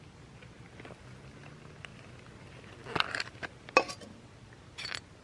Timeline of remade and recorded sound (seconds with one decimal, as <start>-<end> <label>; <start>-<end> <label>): 0.0-5.2 recorded